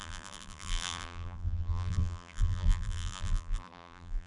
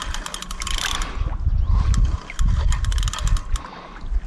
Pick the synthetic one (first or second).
first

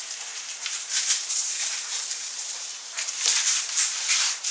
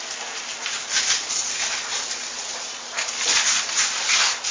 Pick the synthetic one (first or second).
first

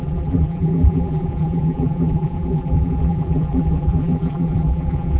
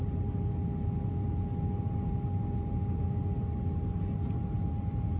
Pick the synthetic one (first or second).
first